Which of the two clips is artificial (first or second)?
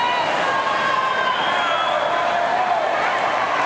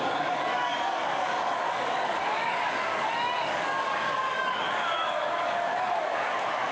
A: second